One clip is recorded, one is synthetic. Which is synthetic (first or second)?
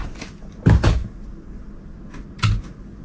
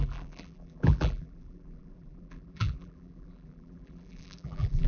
second